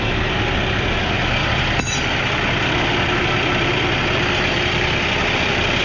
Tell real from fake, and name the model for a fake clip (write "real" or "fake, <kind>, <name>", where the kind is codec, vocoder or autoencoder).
real